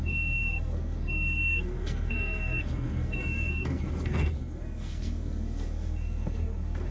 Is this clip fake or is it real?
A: fake